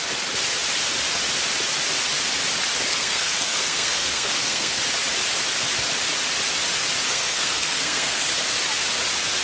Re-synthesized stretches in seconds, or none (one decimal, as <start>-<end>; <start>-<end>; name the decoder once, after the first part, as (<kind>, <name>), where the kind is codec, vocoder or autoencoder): 2.9-4.8 (codec, SNAC); 7.1-8.3